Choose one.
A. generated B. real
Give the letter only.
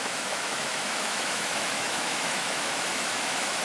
A